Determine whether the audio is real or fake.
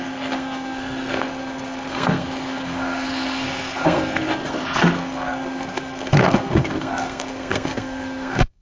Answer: fake